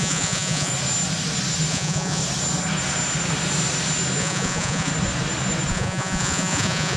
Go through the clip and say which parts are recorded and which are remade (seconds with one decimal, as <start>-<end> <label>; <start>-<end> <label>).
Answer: 0.0-0.7 remade; 0.7-1.7 recorded; 1.7-2.2 remade; 2.2-4.2 recorded; 4.2-4.9 remade; 4.9-5.7 recorded; 5.7-7.0 remade